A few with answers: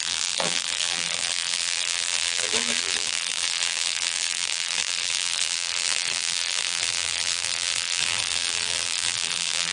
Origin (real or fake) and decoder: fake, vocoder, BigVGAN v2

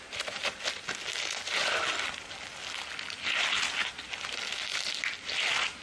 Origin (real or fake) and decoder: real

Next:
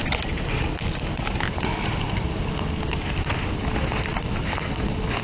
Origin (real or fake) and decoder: real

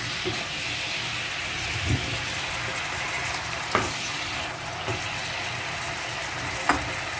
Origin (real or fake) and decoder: real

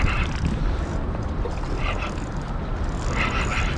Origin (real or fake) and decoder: real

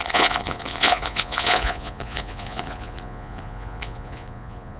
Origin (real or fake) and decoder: fake, vocoder, Vocos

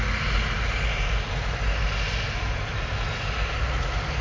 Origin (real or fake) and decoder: real